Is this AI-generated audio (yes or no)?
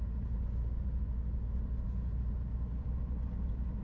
no